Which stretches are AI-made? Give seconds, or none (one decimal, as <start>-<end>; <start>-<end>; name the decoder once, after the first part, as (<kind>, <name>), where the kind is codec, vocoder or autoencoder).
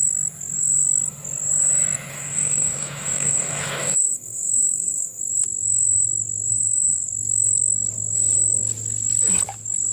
2.1-5.2 (codec, DAC); 6.5-7.1